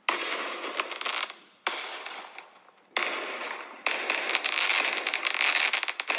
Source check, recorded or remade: recorded